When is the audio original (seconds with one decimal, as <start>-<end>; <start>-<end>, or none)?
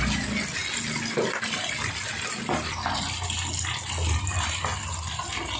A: 0.0-5.6